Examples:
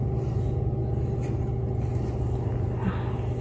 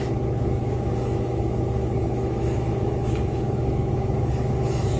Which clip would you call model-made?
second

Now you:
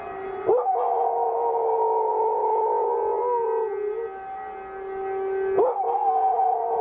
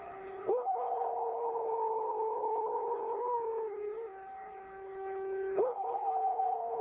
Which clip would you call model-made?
second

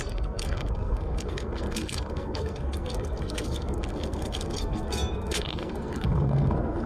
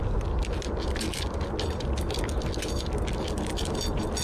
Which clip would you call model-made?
first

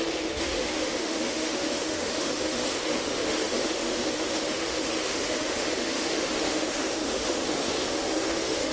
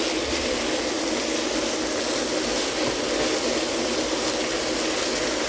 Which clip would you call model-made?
first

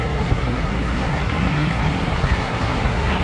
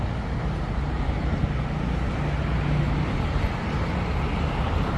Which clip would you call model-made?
first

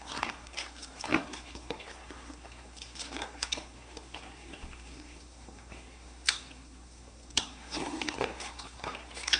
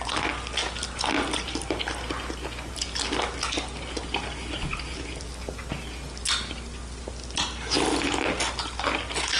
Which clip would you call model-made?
first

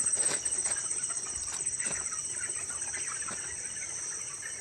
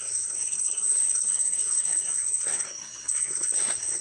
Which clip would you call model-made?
second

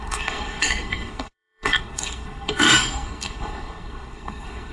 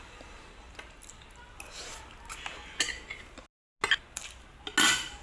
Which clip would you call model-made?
first